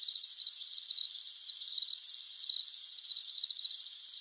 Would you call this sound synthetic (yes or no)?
no